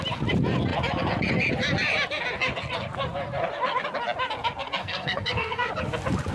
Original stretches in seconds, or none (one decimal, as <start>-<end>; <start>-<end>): 0.0-4.8; 5.7-6.3